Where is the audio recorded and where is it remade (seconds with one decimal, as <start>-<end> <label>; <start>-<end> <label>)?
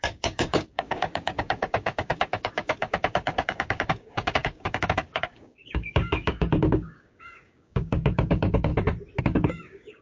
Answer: 0.0-8.7 remade; 8.7-9.2 recorded; 9.2-10.0 remade